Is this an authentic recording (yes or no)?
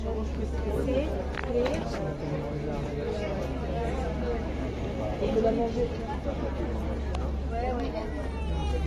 yes